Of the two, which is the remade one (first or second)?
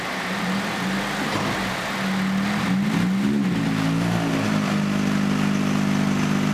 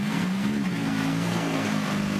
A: second